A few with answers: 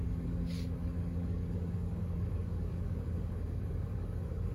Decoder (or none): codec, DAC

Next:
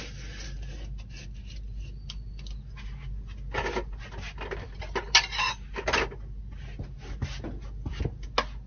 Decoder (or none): none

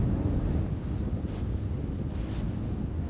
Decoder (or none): none